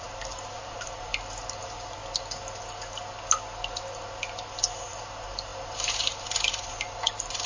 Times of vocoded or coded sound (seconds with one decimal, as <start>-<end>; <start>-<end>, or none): 0.0-1.1; 1.6-2.0; 4.9-7.5